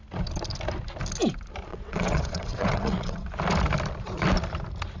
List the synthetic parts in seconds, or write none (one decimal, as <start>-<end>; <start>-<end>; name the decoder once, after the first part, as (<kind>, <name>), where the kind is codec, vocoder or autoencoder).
1.7-3.3 (vocoder, WaveNeXt)